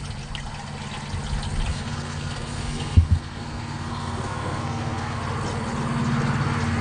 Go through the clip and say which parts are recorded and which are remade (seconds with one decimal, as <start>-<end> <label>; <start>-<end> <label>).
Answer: 0.0-1.7 recorded; 1.7-5.2 remade; 5.2-6.8 recorded